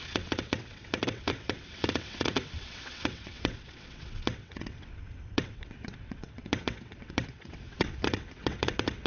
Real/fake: fake